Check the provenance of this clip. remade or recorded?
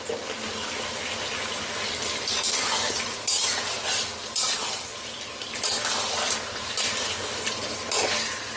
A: recorded